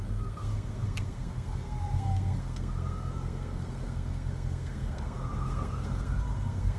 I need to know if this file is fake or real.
fake